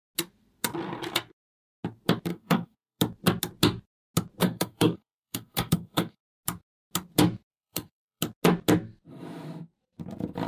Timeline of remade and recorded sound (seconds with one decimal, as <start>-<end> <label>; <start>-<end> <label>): 0.0-2.3 recorded; 2.3-3.0 remade; 3.0-4.4 recorded; 4.4-6.2 remade; 6.2-7.5 recorded; 7.5-8.2 remade; 8.2-10.5 recorded